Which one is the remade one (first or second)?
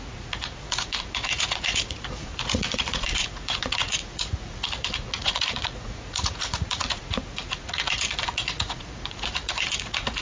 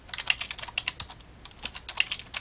first